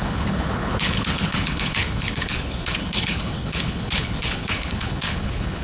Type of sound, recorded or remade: remade